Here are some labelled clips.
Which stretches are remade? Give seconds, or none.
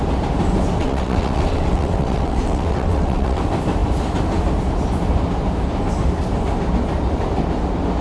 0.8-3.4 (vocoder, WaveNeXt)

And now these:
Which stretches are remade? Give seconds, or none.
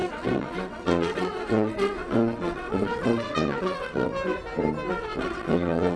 0.0-4.1 (vocoder, WaveNeXt); 4.9-6.0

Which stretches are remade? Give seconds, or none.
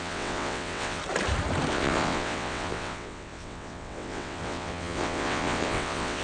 0.0-1.0 (vocoder, WaveNeXt); 1.7-6.2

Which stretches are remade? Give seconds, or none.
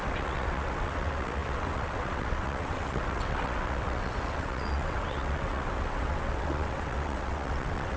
0.0-8.0 (vocoder, WaveNeXt)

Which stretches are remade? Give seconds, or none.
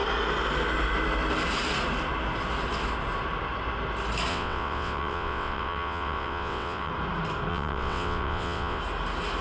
4.3-6.9 (vocoder, WaveNeXt); 7.5-8.8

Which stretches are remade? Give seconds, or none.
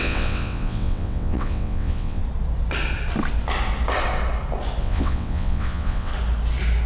0.0-2.2 (vocoder, WaveNeXt); 4.8-6.1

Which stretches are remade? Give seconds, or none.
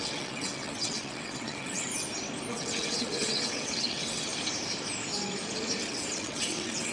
0.0-1.9 (vocoder, WaveNeXt); 2.5-4.3; 5.8-6.9